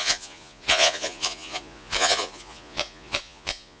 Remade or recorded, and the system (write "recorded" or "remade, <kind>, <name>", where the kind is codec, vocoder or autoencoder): remade, vocoder, Vocos